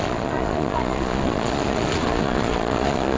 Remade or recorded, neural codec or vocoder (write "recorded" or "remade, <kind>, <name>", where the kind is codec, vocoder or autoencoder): remade, vocoder, Vocos